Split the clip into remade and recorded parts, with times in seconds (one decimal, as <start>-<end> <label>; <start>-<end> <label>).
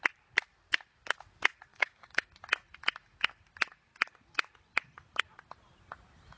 0.0-1.7 recorded; 1.7-2.3 remade; 2.3-6.4 recorded